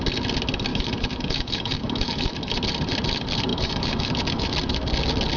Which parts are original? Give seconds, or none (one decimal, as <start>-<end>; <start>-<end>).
0.0-0.7; 2.5-3.5; 4.5-5.4